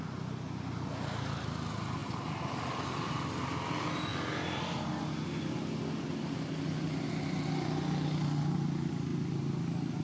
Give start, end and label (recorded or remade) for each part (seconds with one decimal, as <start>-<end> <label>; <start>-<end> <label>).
0.0-10.0 recorded